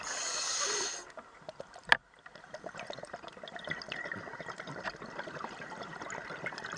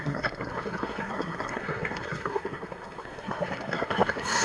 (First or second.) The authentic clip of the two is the first